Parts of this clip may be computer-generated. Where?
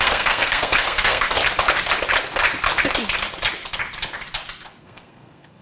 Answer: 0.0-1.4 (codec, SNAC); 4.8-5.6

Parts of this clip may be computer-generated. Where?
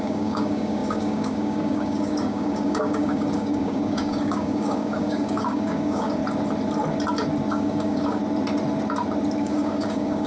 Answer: 0.0-6.2 (codec, DAC); 7.5-8.2; 9.4-10.3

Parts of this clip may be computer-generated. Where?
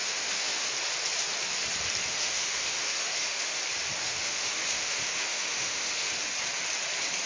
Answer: 0.0-0.7 (autoencoder, DAC-VAE); 2.1-3.6; 4.0-6.1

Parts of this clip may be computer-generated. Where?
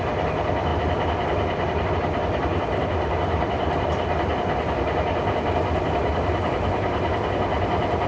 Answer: none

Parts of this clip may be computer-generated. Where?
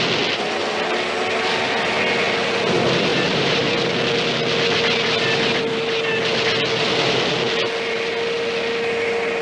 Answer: 3.1-3.7 (vocoder, BigVGAN v2)